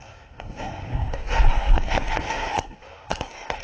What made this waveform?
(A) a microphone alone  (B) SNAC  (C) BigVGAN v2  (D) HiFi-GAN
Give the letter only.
B